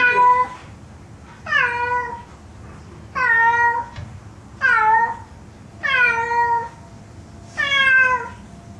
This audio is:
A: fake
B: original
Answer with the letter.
B